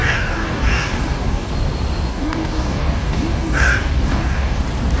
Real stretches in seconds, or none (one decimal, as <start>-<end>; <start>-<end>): 1.5-2.1; 4.6-5.0